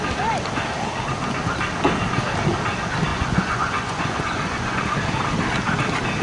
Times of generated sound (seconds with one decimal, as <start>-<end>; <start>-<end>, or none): 3.1-4.8